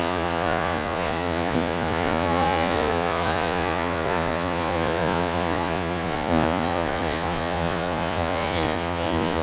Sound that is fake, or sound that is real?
fake